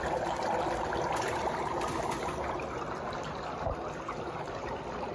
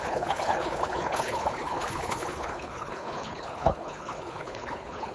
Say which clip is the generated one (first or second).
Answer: second